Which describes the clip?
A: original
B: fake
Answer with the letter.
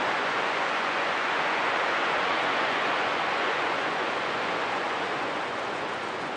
B